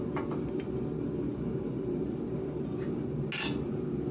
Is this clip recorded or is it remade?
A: recorded